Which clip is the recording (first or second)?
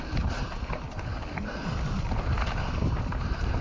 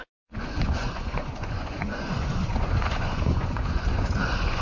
first